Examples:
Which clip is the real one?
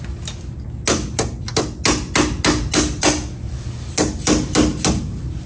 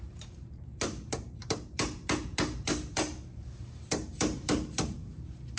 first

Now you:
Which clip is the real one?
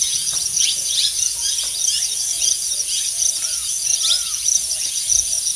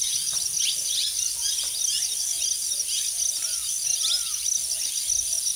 second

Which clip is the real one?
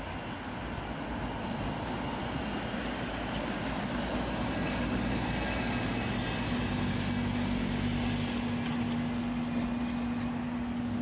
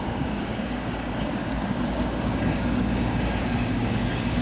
first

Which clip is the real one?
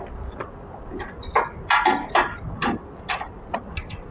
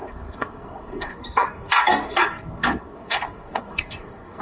first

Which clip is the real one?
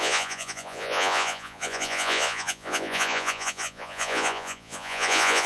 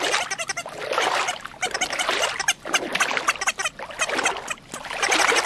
second